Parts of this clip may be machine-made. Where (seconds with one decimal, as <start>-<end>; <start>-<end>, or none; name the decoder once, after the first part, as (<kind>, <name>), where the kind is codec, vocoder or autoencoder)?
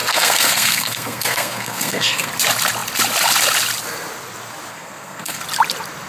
0.0-2.3 (codec, SNAC); 4.7-5.4